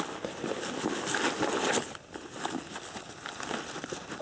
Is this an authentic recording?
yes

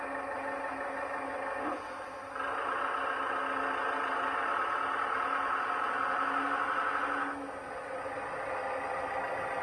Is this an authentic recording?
yes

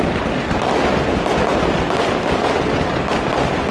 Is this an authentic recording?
yes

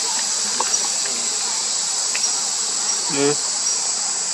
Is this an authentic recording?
yes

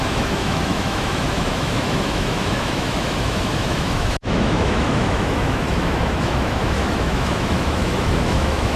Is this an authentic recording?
no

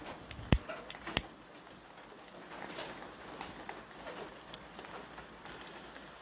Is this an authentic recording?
yes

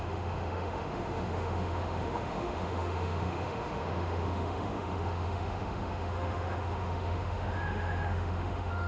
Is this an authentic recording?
no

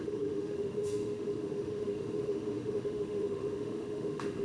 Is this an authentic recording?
no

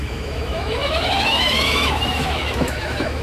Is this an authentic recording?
no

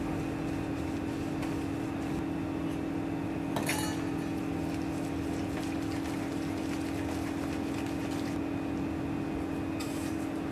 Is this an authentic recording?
yes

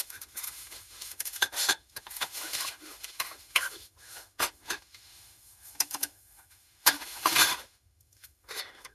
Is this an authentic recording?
no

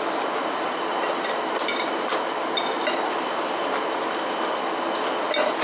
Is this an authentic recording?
yes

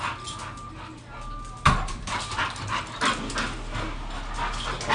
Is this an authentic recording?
yes